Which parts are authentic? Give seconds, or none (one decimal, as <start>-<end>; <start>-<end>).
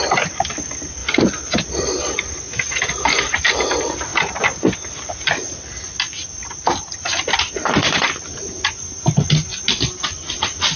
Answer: 0.0-10.8